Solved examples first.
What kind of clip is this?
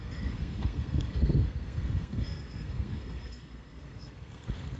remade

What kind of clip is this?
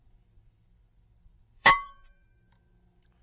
remade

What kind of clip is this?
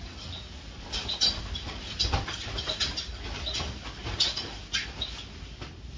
recorded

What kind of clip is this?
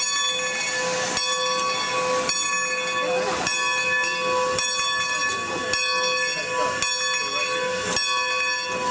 recorded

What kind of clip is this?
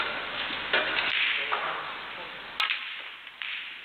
recorded